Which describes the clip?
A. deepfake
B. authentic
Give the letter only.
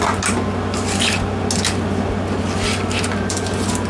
B